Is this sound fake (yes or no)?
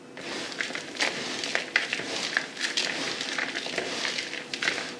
no